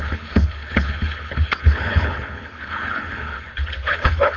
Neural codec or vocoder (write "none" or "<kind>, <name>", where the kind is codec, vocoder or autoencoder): codec, HILCodec